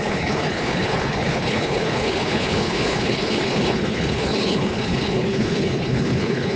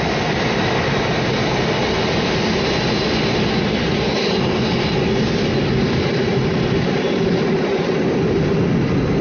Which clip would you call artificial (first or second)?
first